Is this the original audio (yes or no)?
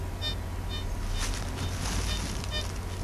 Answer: yes